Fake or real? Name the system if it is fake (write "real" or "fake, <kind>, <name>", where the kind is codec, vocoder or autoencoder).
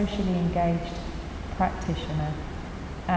real